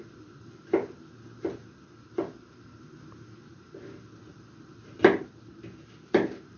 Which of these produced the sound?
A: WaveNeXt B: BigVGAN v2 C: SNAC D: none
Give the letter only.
D